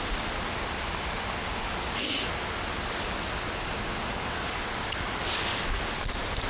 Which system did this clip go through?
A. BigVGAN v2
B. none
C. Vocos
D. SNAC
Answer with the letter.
B